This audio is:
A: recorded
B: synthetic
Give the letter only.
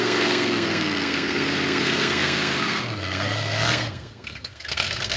B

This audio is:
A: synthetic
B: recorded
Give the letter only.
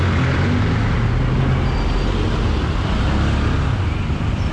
B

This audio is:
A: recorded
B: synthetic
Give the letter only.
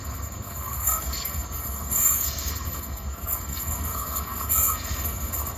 B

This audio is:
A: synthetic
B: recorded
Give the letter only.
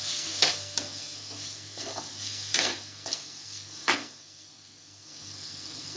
A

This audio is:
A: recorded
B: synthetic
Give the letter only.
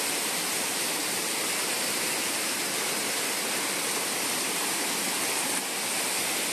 A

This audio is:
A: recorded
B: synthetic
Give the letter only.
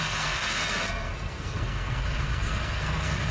B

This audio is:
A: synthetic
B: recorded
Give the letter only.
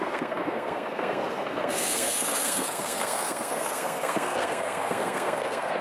A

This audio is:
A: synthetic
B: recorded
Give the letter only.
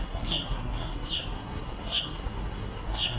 A